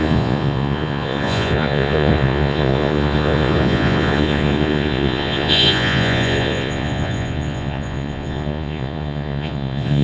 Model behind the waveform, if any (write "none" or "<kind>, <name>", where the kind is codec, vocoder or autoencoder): vocoder, Vocos